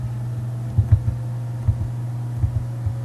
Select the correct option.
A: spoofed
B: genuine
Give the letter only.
B